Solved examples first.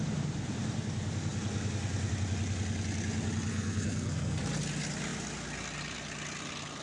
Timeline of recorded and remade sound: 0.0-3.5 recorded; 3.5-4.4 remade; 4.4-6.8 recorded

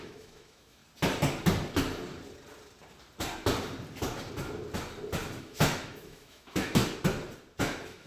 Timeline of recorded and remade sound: 0.0-0.8 remade; 0.8-5.4 recorded; 5.4-6.8 remade; 6.8-7.6 recorded; 7.6-8.1 remade

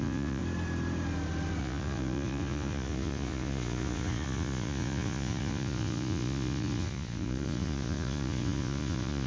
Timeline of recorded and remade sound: 0.0-0.4 remade; 0.4-1.6 recorded; 1.6-9.3 remade

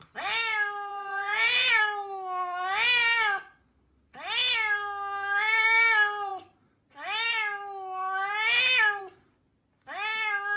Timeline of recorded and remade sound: 0.0-0.9 recorded; 0.9-1.8 remade; 1.8-10.6 recorded